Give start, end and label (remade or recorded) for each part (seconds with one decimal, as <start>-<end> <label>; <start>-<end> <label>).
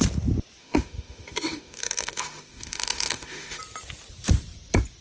0.0-0.6 recorded; 0.6-3.6 remade; 3.6-5.0 recorded